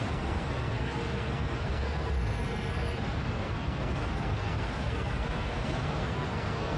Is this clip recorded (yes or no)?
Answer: no